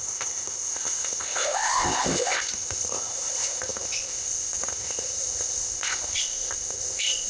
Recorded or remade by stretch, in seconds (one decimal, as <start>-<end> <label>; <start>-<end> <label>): 0.0-7.3 remade